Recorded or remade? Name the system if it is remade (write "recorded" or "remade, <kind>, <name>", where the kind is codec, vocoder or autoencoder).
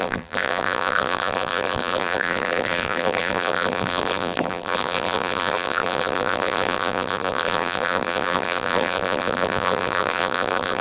remade, vocoder, BigVGAN v2